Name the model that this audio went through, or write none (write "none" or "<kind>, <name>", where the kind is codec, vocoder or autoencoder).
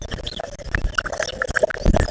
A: none